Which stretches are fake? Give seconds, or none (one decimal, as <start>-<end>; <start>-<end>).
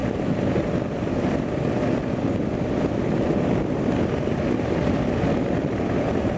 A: none